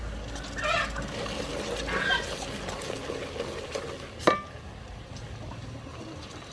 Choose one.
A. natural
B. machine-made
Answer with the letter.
A